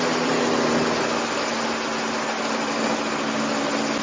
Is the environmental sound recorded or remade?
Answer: recorded